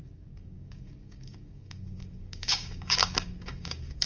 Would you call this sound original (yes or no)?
no